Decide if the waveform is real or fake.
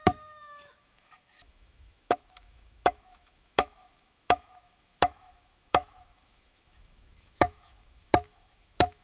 fake